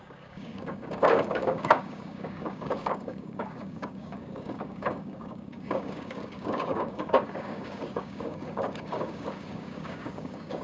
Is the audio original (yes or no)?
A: no